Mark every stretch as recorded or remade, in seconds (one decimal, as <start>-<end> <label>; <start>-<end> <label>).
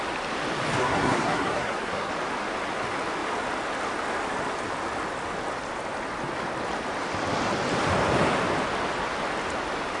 0.0-0.8 recorded; 0.8-2.1 remade; 2.1-10.0 recorded